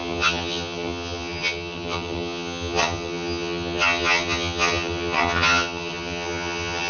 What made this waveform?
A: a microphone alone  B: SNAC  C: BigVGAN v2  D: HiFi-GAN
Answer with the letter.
D